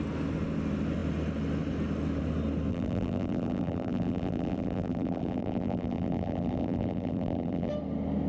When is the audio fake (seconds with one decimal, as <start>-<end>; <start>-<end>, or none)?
2.7-7.7